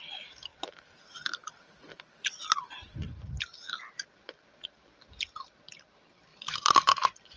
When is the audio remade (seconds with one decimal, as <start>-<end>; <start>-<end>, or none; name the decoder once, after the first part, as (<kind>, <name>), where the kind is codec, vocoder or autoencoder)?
0.5-3.4 (vocoder, BigVGAN v2); 6.3-7.4

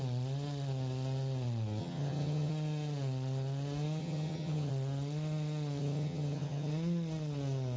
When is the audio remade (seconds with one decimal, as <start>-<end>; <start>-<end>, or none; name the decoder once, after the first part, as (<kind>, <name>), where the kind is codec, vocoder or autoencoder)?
1.8-2.5 (vocoder, HiFi-GAN); 4.0-4.7; 5.8-6.7

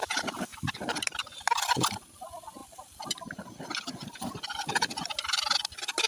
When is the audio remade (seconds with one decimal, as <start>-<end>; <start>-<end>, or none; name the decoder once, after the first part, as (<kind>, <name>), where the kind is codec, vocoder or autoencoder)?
2.6-4.3 (vocoder, BigVGAN v2)